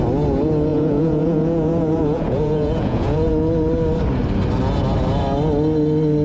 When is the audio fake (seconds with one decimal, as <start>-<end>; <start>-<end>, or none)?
0.7-3.3